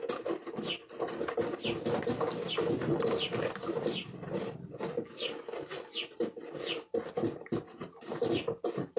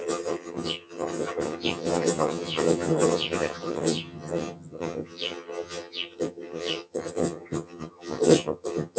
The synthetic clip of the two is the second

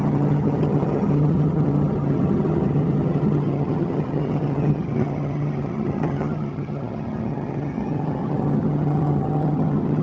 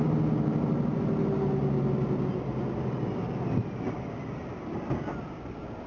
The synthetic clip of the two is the first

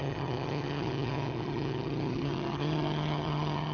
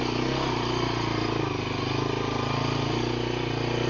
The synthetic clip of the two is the first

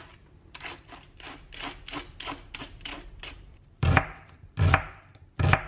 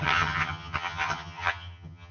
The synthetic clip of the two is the second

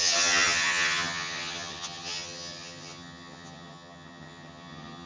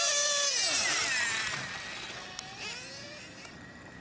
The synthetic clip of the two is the first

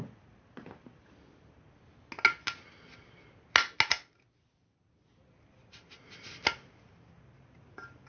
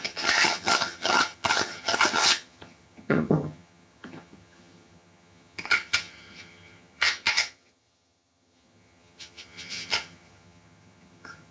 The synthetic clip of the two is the second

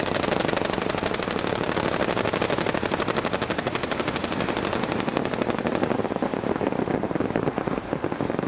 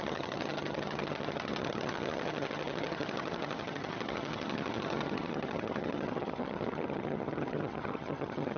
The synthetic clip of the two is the second